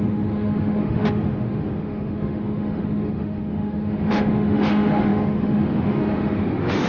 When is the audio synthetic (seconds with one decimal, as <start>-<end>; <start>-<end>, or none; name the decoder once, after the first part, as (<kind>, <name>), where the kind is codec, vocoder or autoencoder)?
0.0-6.9 (autoencoder, DAC-VAE)